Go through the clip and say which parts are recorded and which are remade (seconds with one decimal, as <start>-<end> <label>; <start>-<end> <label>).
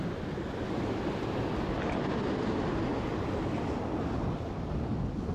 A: 0.0-5.3 recorded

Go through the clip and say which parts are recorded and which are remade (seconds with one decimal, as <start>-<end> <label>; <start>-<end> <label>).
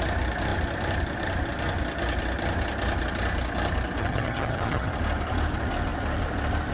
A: 0.0-4.0 recorded; 4.0-4.9 remade; 4.9-6.7 recorded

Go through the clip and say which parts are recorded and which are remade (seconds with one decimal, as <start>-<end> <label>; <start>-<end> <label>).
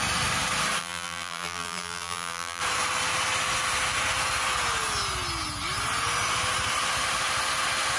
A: 0.0-0.8 recorded; 0.8-2.6 remade; 2.6-8.0 recorded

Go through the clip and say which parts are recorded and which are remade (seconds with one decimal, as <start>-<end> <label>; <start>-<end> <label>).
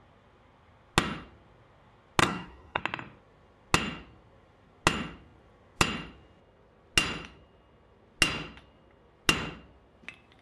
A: 0.0-2.2 recorded; 2.2-2.8 remade; 2.8-10.4 recorded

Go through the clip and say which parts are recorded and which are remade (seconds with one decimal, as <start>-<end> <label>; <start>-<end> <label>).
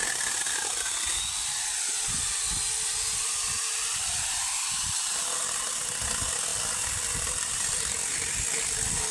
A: 0.0-9.1 recorded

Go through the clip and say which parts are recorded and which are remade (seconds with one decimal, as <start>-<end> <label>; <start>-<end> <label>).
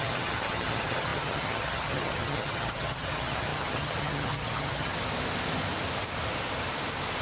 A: 0.0-4.9 remade; 4.9-7.2 recorded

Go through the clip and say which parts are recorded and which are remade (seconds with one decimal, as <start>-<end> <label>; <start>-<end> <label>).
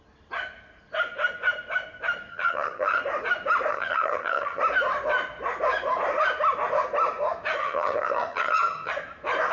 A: 0.0-2.3 recorded; 2.3-3.0 remade; 3.0-3.7 recorded; 3.7-4.6 remade; 4.6-7.6 recorded; 7.6-8.9 remade; 8.9-9.5 recorded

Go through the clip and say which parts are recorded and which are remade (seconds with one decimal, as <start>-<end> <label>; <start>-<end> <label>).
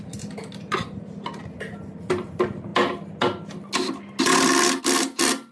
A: 0.0-5.5 recorded